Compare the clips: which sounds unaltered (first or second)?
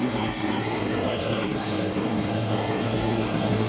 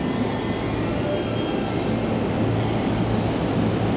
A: second